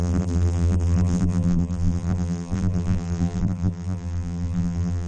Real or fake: fake